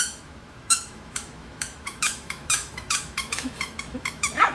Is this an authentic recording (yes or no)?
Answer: no